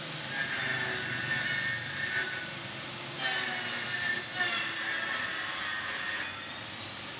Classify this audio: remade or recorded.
recorded